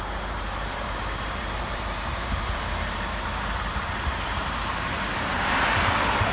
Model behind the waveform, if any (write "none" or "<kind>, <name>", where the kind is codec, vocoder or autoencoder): vocoder, BigVGAN v2